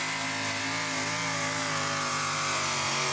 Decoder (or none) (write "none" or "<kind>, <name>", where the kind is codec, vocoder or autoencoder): none